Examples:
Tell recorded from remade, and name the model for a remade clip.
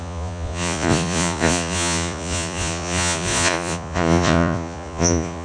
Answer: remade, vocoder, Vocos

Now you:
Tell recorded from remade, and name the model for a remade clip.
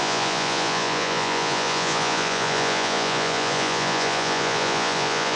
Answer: remade, vocoder, Vocos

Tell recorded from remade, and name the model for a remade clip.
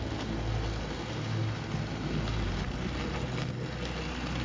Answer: recorded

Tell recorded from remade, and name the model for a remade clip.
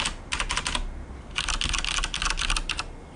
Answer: recorded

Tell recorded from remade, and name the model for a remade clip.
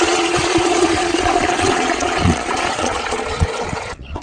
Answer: remade, vocoder, Vocos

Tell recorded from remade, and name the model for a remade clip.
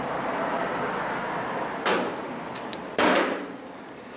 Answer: recorded